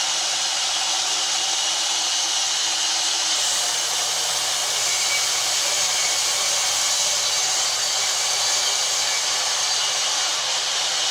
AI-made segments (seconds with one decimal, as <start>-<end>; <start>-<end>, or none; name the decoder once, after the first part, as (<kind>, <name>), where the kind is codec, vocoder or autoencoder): 4.6-6.0 (vocoder, BigVGAN v2)